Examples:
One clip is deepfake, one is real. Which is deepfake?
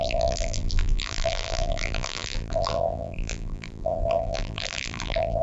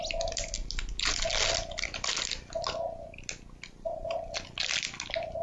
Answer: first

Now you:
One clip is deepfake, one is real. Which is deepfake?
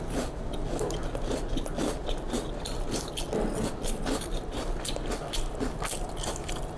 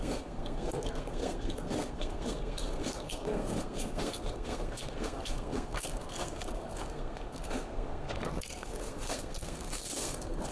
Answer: second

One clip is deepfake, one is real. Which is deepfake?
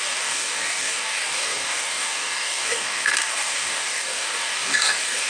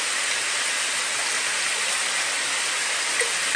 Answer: first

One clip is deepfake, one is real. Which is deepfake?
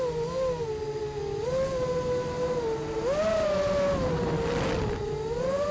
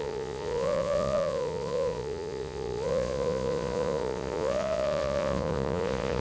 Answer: second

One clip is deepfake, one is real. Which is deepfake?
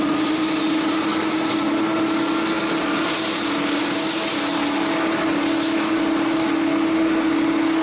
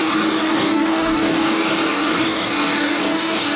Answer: second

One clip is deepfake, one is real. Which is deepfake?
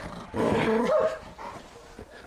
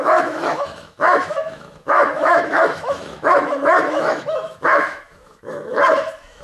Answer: second